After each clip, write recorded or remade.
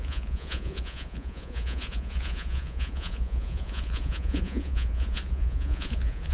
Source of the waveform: remade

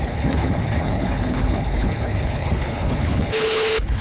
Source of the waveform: remade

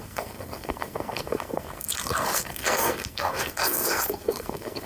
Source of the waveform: remade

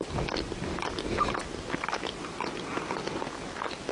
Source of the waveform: recorded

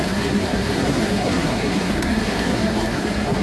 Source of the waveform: remade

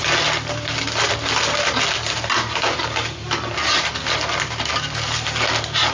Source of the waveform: recorded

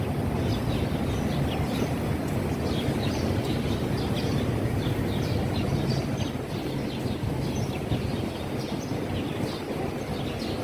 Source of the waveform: recorded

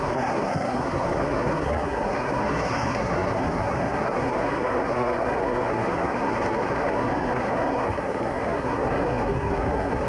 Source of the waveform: remade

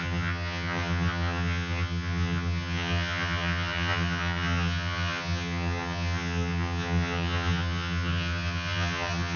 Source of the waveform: remade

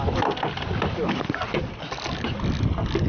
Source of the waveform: recorded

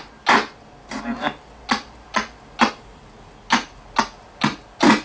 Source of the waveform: recorded